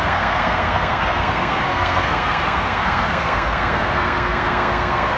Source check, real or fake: fake